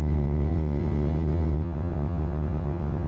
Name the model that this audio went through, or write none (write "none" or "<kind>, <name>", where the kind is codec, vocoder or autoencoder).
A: vocoder, WaveNeXt